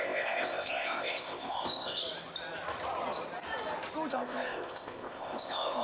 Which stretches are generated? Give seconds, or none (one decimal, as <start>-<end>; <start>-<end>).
0.0-2.0; 4.1-5.8